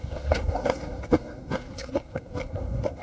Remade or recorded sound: remade